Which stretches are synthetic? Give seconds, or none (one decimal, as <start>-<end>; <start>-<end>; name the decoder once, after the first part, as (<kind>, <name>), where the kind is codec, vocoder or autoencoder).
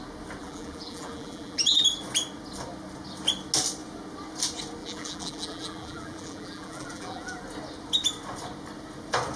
0.4-1.8 (vocoder, BigVGAN v2); 4.8-7.4